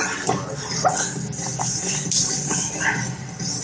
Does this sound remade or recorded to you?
recorded